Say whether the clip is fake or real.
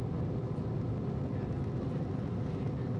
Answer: real